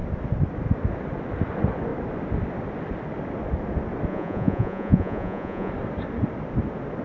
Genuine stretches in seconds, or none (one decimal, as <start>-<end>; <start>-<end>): 0.0-4.1; 5.7-7.0